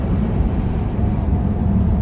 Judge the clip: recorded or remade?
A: remade